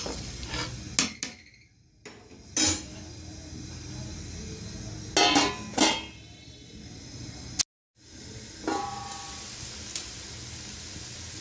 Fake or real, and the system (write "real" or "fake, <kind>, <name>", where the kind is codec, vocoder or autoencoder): real